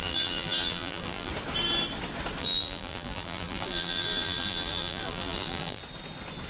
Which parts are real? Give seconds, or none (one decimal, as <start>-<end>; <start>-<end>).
1.3-2.4; 5.8-6.5